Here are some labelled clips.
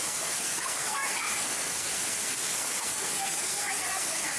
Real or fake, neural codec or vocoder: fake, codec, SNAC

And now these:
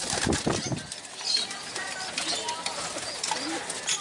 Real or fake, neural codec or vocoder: real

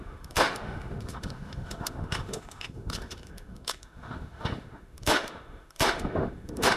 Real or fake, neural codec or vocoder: fake, autoencoder, DAC-VAE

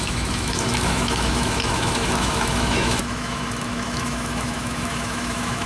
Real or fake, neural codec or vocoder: fake, autoencoder, DAC-VAE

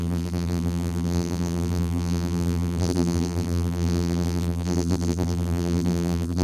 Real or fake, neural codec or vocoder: fake, vocoder, BigVGAN v2